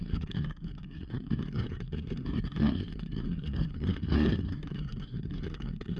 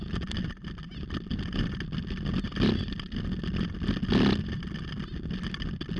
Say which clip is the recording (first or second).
second